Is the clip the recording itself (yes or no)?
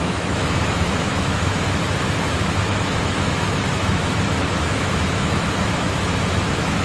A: no